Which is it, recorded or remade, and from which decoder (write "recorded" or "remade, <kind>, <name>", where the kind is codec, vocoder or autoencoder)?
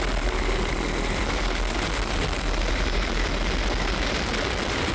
recorded